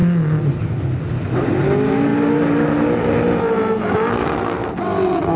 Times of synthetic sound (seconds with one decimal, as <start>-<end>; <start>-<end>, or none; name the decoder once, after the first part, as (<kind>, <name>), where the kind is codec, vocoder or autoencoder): 4.1-4.8 (codec, SNAC)